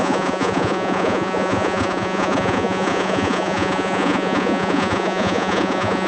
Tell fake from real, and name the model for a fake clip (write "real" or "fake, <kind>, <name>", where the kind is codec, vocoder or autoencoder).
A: fake, vocoder, Vocos